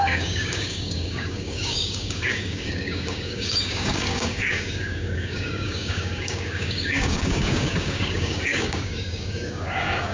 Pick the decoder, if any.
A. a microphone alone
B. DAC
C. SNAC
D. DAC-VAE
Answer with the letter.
B